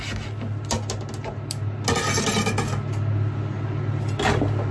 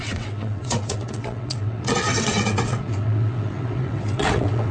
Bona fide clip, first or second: first